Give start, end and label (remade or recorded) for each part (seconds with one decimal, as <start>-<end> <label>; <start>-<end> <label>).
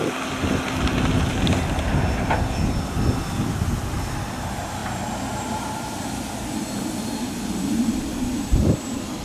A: 0.0-9.2 recorded